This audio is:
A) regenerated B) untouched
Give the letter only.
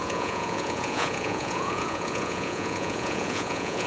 A